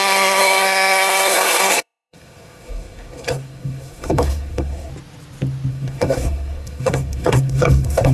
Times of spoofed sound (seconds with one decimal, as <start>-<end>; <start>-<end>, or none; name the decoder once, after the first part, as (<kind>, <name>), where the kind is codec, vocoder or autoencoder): 0.0-4.9 (codec, SNAC); 5.7-8.1